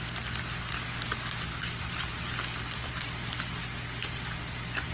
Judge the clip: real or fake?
real